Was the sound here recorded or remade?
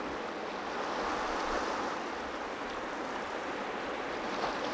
recorded